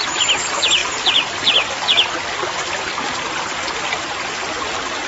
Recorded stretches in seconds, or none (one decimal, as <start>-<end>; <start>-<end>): 0.0-0.8; 3.9-5.1